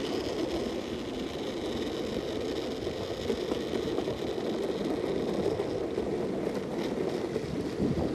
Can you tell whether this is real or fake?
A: real